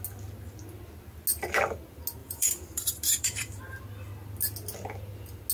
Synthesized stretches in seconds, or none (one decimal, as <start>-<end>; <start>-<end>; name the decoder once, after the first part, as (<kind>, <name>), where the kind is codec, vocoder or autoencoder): 2.2-3.8 (vocoder, BigVGAN v2)